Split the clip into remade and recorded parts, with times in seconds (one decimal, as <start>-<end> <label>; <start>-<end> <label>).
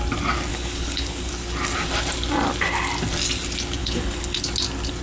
0.0-0.5 recorded; 0.5-1.3 remade; 1.3-3.8 recorded; 3.8-4.4 remade; 4.4-5.0 recorded